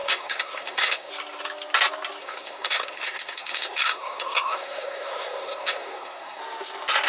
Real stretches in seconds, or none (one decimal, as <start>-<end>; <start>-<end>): 1.1-2.2; 6.4-7.1